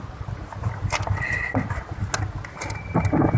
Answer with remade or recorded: recorded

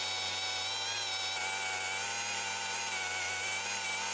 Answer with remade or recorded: recorded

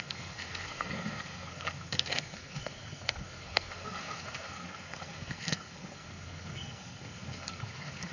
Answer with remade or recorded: remade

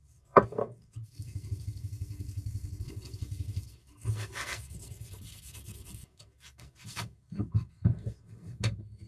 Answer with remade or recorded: remade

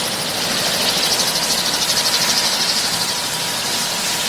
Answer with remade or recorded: recorded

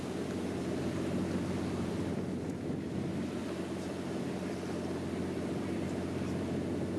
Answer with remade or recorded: recorded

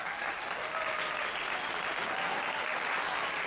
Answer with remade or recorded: recorded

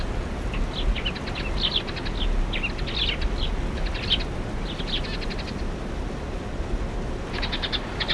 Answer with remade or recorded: recorded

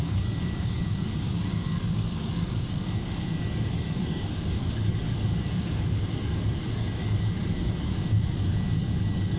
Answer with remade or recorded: remade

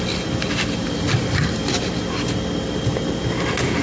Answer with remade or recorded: recorded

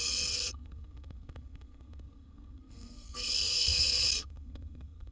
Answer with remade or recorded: remade